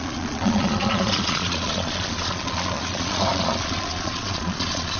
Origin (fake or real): fake